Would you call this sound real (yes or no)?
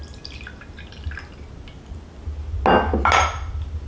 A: yes